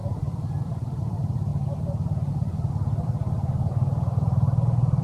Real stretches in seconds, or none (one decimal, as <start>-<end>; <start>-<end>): 0.0-5.0